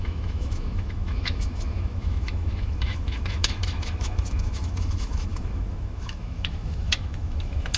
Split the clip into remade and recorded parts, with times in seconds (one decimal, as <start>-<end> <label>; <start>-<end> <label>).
0.0-7.8 remade